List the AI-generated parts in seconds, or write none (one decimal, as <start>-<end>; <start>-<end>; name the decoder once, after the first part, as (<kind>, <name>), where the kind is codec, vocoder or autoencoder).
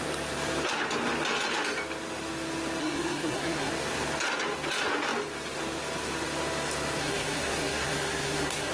2.8-3.7 (codec, SNAC); 7.0-8.7